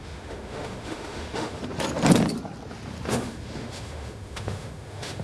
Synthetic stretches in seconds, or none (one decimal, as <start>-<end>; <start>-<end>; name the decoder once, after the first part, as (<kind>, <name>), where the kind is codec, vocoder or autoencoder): 0.0-1.6 (autoencoder, DAC-VAE); 3.1-5.2